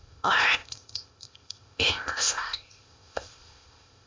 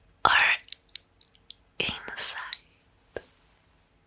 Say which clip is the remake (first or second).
first